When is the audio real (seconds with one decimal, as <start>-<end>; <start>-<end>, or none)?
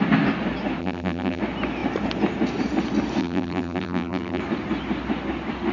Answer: 0.0-0.8; 1.4-3.2; 4.4-5.7